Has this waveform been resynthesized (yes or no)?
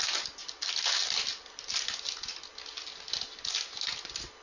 no